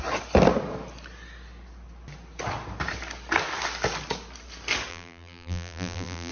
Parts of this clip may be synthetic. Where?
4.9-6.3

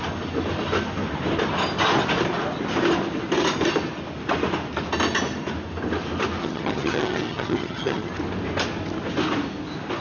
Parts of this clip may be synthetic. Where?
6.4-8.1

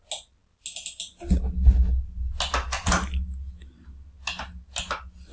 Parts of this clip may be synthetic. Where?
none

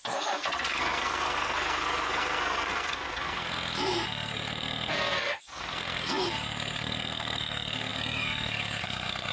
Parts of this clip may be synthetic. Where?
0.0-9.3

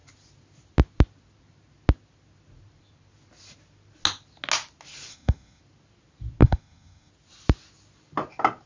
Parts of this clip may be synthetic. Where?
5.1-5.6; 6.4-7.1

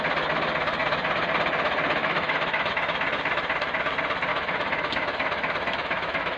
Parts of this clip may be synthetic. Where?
2.0-2.7; 4.3-6.4